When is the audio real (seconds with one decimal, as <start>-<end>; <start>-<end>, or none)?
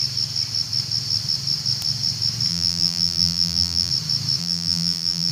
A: 0.0-2.5; 3.9-4.4